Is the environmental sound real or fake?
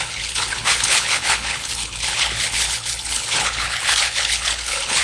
fake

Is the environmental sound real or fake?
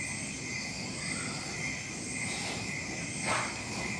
real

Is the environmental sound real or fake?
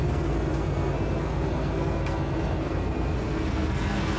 fake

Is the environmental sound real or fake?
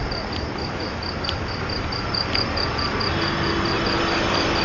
real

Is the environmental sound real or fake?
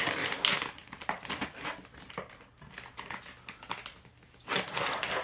real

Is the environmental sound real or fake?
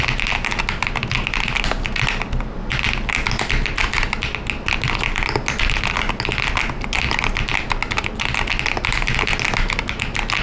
real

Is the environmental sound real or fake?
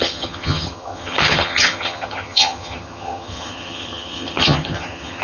fake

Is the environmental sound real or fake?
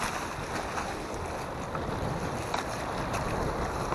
real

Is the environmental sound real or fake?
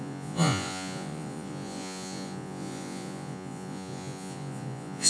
fake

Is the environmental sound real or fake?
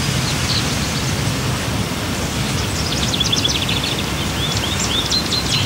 real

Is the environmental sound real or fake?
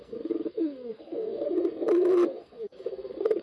fake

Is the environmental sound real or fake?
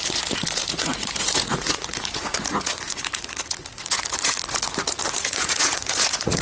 fake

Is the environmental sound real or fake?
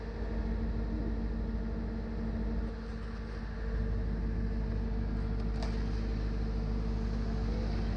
real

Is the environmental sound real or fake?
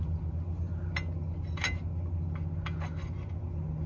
real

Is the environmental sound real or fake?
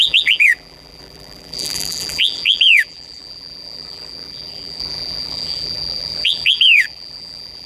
fake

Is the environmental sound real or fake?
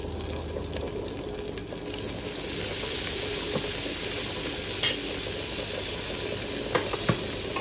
real